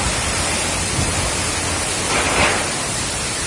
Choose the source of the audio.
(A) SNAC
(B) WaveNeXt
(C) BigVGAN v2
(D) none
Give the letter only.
D